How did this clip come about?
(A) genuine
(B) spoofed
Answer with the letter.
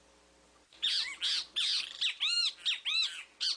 A